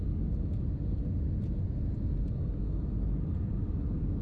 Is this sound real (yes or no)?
yes